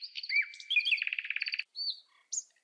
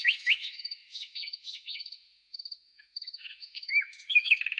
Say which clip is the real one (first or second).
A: first